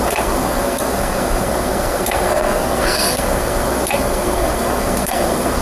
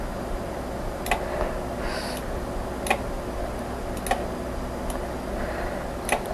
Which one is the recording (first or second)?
second